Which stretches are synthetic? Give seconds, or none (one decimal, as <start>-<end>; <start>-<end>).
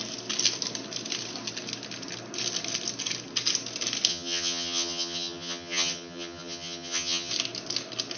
4.1-7.3